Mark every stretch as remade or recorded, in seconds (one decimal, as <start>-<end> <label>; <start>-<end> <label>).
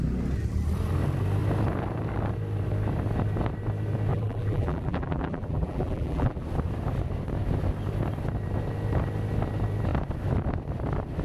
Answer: 0.0-4.1 recorded; 4.1-6.4 remade; 6.4-11.2 recorded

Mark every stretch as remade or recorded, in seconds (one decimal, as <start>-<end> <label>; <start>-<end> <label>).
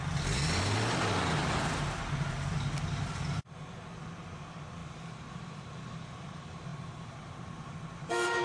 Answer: 0.0-1.4 recorded; 1.4-2.3 remade; 2.3-4.8 recorded; 4.8-5.7 remade; 5.7-6.7 recorded; 6.7-7.7 remade; 7.7-8.4 recorded